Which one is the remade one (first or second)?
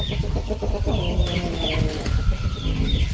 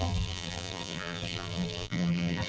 second